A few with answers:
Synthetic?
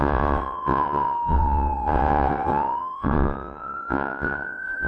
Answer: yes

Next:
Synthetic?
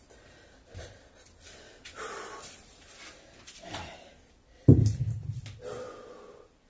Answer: yes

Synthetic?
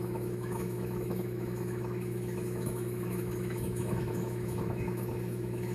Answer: yes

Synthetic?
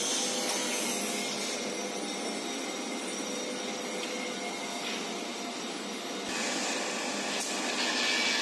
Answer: no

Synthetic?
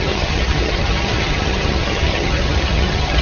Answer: yes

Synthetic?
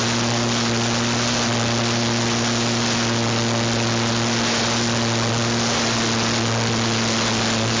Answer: no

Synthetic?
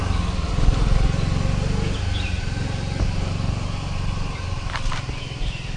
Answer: no